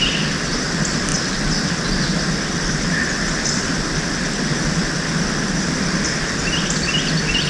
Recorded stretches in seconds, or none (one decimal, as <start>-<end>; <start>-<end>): 0.0-7.5